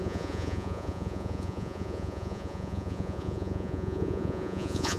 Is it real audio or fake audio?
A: fake